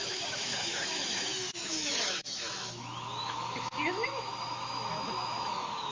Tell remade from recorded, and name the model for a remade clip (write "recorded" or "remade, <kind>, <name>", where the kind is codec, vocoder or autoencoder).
remade, autoencoder, DAC-VAE